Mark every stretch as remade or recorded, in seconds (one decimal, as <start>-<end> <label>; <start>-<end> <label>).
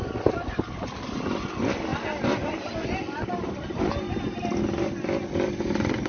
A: 0.0-6.1 recorded